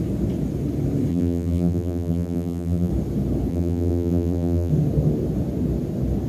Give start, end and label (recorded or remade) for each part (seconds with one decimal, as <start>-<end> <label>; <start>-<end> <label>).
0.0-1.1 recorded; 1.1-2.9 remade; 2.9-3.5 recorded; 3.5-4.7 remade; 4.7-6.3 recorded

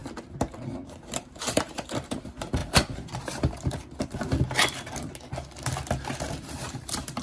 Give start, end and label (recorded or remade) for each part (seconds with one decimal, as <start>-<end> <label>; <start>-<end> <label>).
0.0-1.2 recorded; 1.2-2.6 remade; 2.6-6.3 recorded; 6.3-7.2 remade

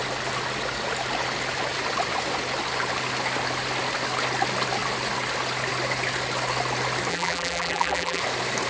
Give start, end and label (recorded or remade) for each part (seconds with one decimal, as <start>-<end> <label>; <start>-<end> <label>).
0.0-7.1 recorded; 7.1-8.2 remade; 8.2-8.7 recorded

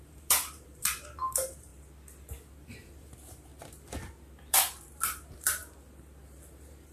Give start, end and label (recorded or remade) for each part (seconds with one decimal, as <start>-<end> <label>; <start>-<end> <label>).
0.0-1.7 remade; 1.7-2.2 recorded; 2.2-3.5 remade; 3.5-4.5 recorded; 4.5-5.6 remade; 5.6-6.5 recorded; 6.5-6.9 remade